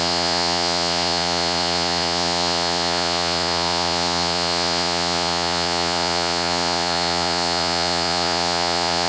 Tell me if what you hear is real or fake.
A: fake